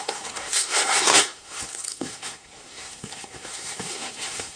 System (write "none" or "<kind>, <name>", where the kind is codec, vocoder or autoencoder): codec, SNAC